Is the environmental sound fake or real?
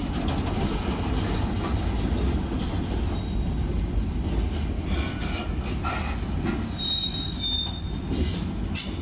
real